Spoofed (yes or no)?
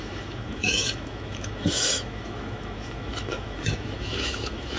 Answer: yes